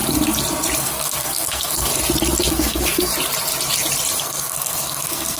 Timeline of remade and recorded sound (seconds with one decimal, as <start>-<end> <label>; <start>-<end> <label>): 0.0-0.8 recorded; 0.8-1.9 remade; 1.9-2.5 recorded; 2.5-3.1 remade; 3.1-4.2 recorded; 4.2-5.4 remade